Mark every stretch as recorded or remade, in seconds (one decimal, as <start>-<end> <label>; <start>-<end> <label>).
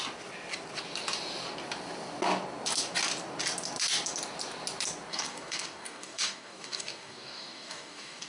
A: 0.0-5.1 recorded; 5.1-8.3 remade